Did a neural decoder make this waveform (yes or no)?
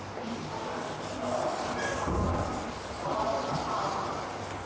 no